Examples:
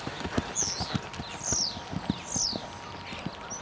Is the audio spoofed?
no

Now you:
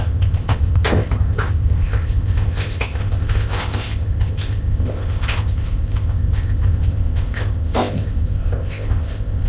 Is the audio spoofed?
yes